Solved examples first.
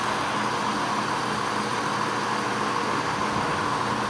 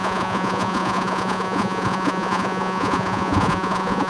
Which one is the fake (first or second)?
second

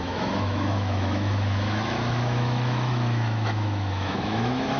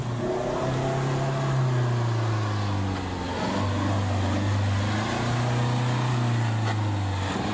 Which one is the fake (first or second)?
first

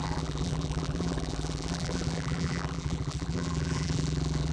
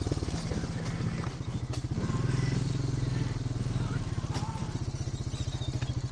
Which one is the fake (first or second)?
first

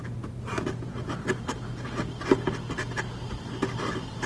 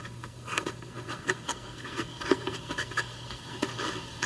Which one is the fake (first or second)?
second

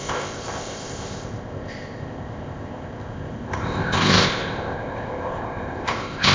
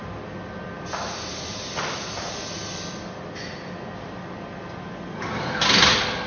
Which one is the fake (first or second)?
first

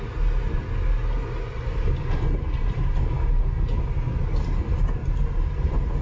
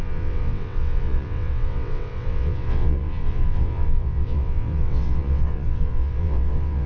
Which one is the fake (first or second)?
second